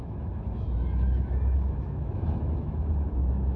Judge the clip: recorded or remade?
remade